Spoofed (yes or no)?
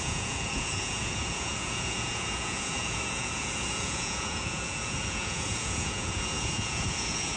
yes